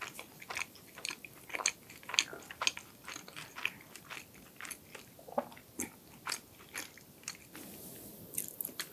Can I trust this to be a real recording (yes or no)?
yes